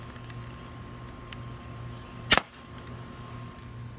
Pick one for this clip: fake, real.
real